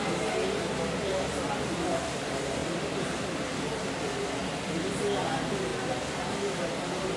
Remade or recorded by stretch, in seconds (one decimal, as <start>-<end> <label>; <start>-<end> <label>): 0.0-7.2 recorded